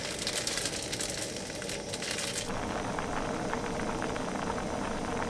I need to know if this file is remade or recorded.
recorded